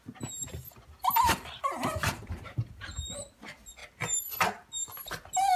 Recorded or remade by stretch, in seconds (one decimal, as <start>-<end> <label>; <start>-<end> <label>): 0.0-5.6 recorded